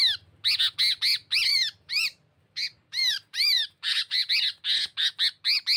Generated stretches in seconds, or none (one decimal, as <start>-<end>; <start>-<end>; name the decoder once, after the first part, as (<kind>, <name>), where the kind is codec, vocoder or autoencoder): 1.5-4.3 (vocoder, BigVGAN v2)